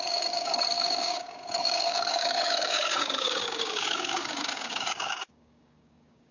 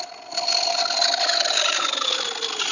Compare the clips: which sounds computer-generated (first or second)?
first